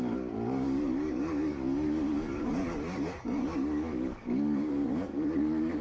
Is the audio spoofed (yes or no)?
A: yes